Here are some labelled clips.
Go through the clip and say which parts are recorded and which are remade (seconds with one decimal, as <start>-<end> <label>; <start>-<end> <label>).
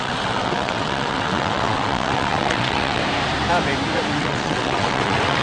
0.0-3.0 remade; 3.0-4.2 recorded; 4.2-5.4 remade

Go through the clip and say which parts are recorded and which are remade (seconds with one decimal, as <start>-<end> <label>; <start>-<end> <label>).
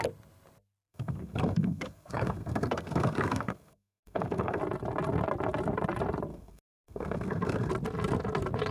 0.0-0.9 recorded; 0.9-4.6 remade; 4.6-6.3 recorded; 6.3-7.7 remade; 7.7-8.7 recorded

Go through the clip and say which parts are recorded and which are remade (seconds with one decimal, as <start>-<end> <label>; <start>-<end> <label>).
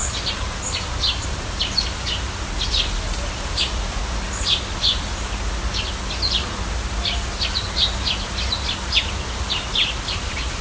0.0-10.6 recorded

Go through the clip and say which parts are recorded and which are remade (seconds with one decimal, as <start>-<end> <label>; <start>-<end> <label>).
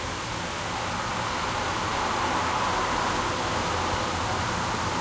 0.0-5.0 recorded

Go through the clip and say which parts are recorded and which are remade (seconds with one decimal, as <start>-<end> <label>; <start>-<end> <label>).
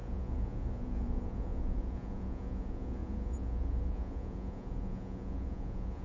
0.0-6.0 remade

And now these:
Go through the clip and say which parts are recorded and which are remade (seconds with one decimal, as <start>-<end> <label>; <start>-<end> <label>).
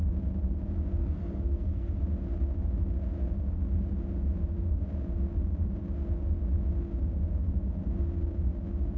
0.0-1.0 recorded; 1.0-2.0 remade; 2.0-9.0 recorded